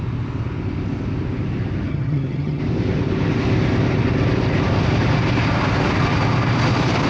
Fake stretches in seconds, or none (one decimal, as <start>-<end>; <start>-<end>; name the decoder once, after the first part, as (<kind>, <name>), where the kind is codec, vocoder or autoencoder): 1.9-2.6 (vocoder, HiFi-GAN)